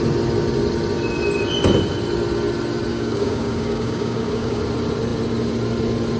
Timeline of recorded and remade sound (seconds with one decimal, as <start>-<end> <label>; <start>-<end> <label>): 0.0-2.9 recorded; 2.9-4.6 remade; 4.6-6.2 recorded